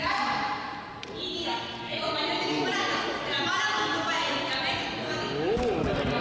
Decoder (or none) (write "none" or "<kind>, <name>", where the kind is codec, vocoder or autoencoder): none